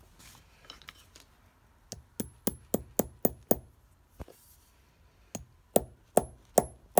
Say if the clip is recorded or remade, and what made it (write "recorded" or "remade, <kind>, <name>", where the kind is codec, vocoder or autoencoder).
recorded